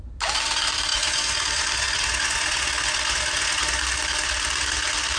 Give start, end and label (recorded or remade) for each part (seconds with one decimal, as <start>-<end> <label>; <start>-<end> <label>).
0.0-0.9 recorded; 0.9-3.8 remade; 3.8-5.2 recorded